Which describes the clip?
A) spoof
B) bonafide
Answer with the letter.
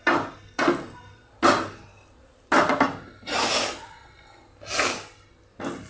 B